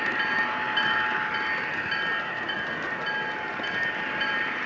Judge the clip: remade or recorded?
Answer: recorded